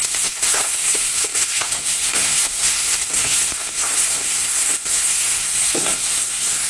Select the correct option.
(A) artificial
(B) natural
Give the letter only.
A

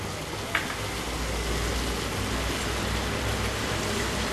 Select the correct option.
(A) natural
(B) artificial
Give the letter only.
A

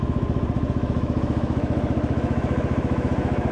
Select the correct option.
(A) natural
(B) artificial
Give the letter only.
B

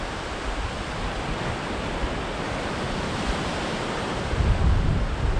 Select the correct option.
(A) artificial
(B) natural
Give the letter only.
B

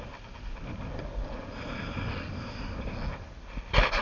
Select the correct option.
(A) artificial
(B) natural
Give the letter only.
B